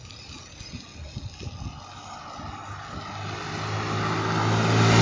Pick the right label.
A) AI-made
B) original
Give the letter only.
B